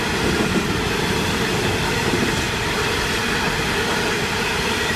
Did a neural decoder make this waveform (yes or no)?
no